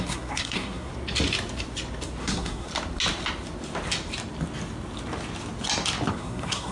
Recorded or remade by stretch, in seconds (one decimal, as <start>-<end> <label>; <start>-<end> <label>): 0.0-0.9 remade; 0.9-2.2 recorded; 2.2-2.7 remade; 2.7-6.1 recorded; 6.1-6.7 remade